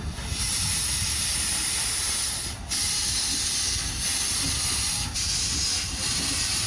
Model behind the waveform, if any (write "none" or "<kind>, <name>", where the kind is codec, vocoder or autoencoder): none